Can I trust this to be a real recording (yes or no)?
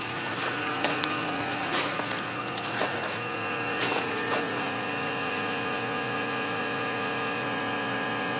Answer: no